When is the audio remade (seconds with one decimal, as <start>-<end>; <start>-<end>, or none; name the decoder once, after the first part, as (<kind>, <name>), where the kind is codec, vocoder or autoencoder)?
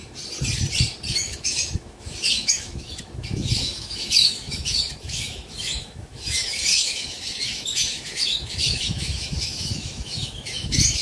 1.1-11.0 (autoencoder, DAC-VAE)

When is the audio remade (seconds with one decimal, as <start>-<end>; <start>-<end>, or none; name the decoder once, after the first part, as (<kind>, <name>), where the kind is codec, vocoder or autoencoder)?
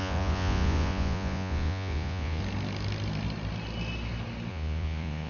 0.0-2.4 (vocoder, Vocos); 4.5-5.3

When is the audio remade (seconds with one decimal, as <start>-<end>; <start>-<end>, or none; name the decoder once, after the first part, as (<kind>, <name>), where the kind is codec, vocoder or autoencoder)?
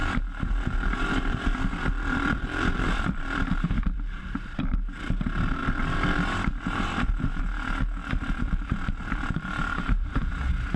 0.0-5.1 (vocoder, BigVGAN v2); 5.6-7.4; 8.0-10.3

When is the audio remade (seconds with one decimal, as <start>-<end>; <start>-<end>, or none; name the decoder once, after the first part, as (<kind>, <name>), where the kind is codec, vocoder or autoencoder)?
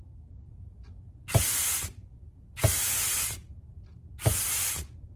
none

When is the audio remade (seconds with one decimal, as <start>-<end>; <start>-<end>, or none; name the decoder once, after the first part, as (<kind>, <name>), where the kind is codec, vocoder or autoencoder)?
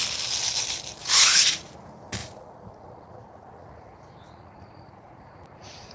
1.0-1.7 (vocoder, Vocos); 2.2-5.9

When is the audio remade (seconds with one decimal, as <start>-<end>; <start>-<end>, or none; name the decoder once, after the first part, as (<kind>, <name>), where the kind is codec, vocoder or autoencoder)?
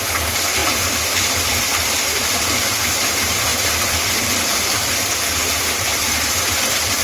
0.0-3.5 (vocoder, BigVGAN v2); 4.4-7.0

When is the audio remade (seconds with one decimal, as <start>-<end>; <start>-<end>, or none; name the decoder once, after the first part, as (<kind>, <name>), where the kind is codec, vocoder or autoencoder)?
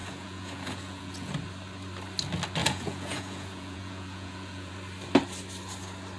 0.0-1.3 (vocoder, Vocos); 2.6-4.7